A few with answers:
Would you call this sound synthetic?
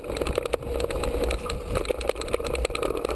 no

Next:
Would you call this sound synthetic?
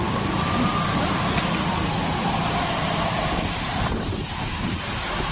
yes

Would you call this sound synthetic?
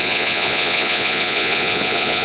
yes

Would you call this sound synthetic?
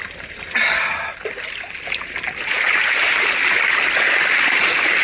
no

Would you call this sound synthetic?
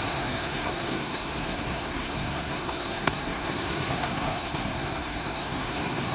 yes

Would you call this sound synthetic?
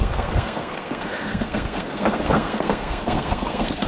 yes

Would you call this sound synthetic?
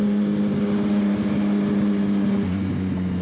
no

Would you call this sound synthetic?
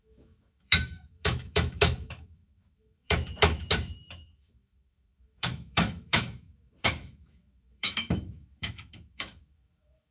yes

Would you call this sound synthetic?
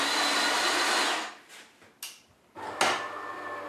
no